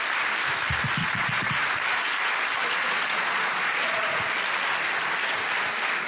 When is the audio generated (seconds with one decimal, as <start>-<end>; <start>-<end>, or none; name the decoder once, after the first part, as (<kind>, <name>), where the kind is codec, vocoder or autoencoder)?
1.0-1.5 (vocoder, Vocos); 2.6-4.2